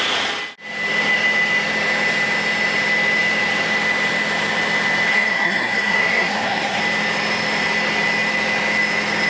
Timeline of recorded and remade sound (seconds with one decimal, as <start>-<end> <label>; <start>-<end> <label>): 0.0-5.1 recorded; 5.1-6.8 remade; 6.8-9.3 recorded